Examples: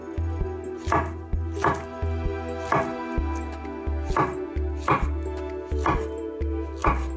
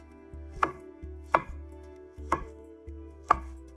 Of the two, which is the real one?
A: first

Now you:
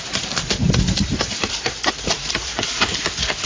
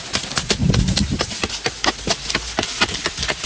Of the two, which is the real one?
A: second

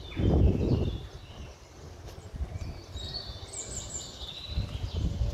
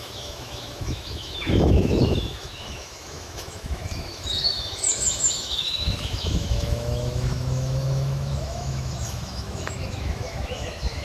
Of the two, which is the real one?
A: first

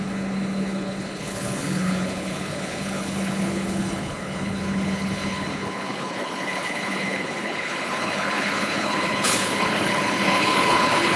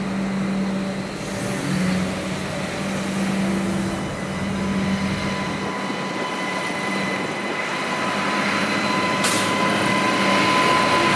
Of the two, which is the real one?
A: second